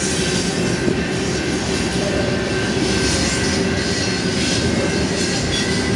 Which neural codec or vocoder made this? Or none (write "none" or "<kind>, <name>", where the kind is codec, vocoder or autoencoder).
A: none